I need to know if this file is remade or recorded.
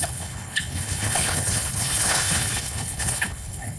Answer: remade